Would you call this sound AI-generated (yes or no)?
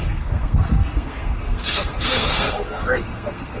yes